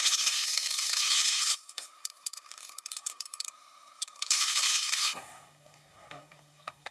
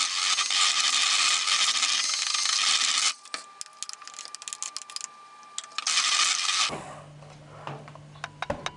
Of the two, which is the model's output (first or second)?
first